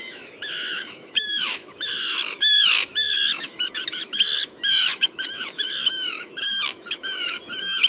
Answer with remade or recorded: remade